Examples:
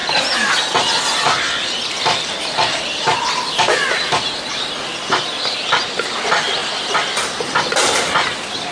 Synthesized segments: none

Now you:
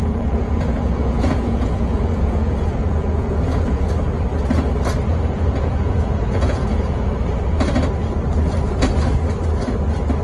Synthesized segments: 0.0-3.9 (vocoder, Vocos); 5.1-7.1

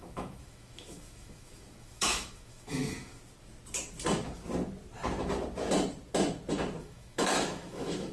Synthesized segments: 0.0-3.2 (autoencoder, DAC-VAE); 6.8-8.1

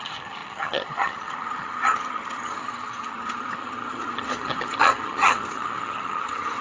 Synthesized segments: 0.0-6.6 (vocoder, HiFi-GAN)

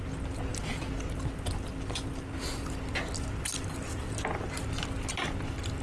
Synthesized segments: none

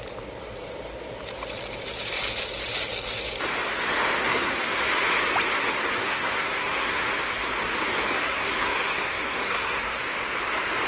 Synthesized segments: 4.2-4.9 (codec, SNAC); 5.9-7.1; 8.1-10.0

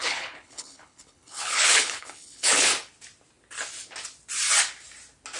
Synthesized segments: 0.0-2.7 (codec, HILCodec)

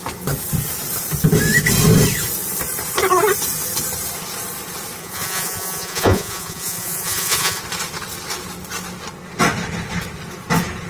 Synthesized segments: 5.0-7.6 (vocoder, Vocos)